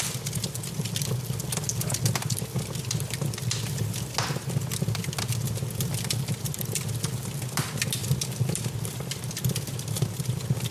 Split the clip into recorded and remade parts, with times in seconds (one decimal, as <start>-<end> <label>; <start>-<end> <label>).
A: 0.0-10.7 recorded